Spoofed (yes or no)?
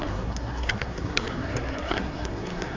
yes